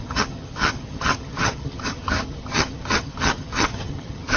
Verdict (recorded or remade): remade